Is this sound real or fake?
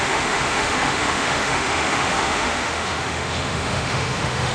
fake